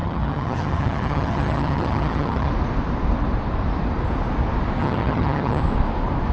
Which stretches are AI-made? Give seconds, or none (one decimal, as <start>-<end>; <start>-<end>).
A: 0.0-2.5; 4.8-5.6